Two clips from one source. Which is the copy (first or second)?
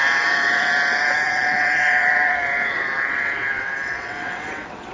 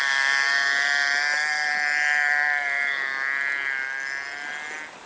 first